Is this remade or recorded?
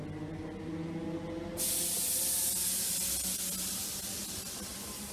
recorded